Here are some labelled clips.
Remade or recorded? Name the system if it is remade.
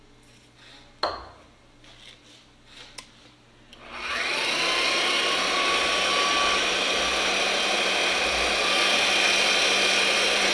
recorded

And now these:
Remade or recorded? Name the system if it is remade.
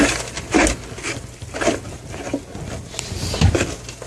recorded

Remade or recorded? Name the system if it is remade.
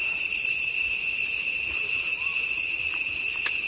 remade, vocoder, BigVGAN v2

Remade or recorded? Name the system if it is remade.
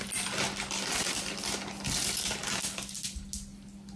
recorded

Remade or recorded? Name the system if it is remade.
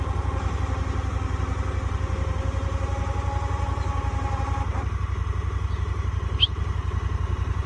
recorded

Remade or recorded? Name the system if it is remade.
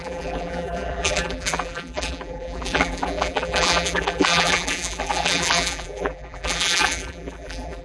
remade, vocoder, BigVGAN v2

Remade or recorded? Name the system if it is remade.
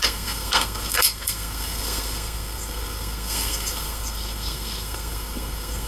remade, codec, SNAC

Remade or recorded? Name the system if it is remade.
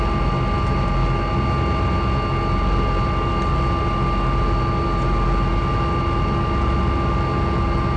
recorded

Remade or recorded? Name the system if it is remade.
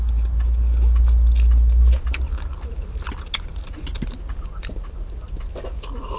recorded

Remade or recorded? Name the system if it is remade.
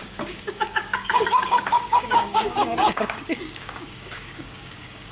remade, codec, DAC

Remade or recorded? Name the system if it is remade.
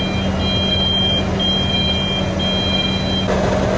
recorded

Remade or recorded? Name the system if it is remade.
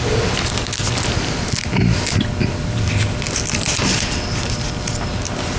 recorded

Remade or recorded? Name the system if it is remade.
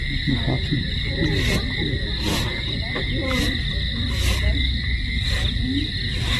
recorded